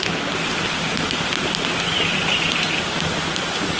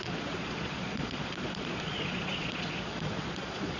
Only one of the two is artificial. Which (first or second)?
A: second